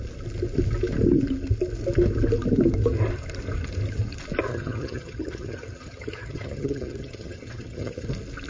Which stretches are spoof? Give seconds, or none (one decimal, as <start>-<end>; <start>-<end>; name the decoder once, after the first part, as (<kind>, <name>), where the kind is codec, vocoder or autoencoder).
4.5-8.1 (vocoder, HiFi-GAN)